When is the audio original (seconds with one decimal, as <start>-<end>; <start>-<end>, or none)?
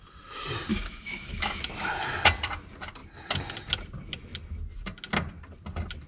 0.0-0.7; 1.6-6.1